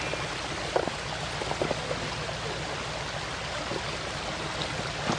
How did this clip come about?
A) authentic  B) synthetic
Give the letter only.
A